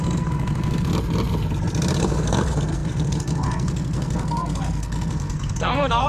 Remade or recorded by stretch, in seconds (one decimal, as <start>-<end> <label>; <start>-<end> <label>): 0.0-0.9 remade; 0.9-2.0 recorded; 2.0-6.1 remade